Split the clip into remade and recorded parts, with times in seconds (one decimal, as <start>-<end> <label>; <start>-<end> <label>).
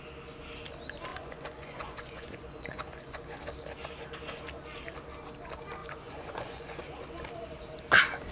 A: 0.0-1.1 recorded; 1.1-3.4 remade; 3.4-5.8 recorded; 5.8-6.8 remade; 6.8-8.3 recorded